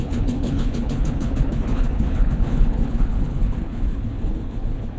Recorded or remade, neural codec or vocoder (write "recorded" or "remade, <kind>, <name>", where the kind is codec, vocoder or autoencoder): remade, codec, HILCodec